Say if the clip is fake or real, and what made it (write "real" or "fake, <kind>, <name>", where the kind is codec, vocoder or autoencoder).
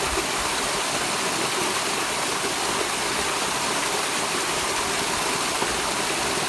fake, vocoder, BigVGAN v2